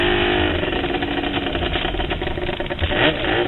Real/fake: real